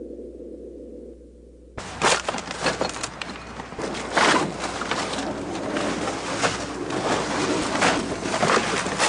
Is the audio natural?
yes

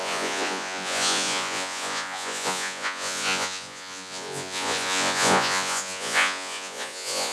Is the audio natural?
no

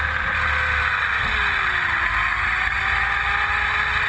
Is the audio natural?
yes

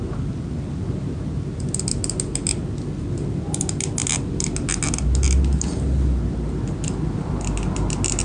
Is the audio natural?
yes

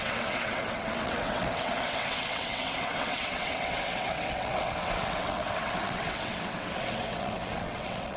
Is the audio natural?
no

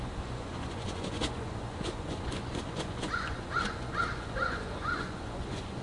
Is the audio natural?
no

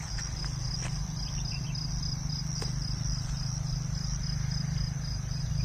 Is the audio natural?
no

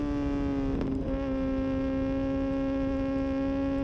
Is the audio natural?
yes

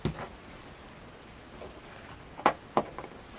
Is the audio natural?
yes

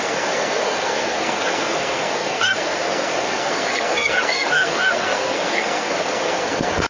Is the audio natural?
no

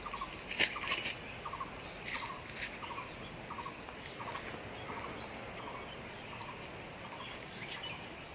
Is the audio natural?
yes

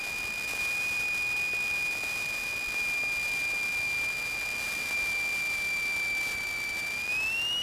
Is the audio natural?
yes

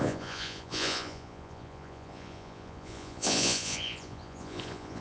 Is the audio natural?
no